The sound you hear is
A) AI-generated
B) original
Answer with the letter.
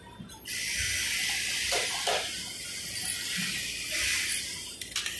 B